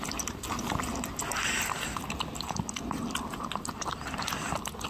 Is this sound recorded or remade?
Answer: recorded